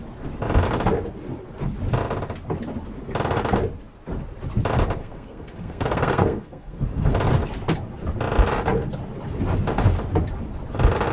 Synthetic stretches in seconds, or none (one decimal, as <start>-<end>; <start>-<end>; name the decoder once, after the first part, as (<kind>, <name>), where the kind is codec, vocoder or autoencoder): 5.0-7.1 (codec, SNAC)

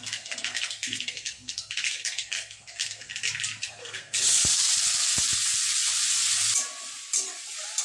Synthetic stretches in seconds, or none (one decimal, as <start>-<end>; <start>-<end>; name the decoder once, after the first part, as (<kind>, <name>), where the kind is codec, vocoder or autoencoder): 0.0-3.1 (codec, SNAC); 3.6-4.4